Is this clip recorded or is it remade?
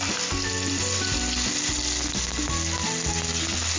recorded